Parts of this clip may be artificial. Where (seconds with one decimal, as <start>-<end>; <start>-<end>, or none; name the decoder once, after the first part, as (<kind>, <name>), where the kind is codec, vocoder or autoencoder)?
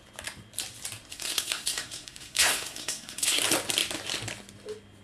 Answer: 1.1-3.4 (codec, SNAC)